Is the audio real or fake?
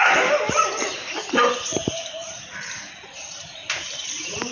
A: fake